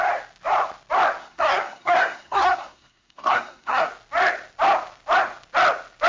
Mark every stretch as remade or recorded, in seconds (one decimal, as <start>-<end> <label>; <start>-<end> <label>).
0.0-1.2 recorded; 1.2-3.9 remade; 3.9-6.1 recorded